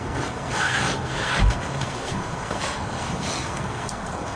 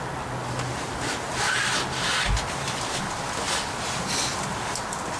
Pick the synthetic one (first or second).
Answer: first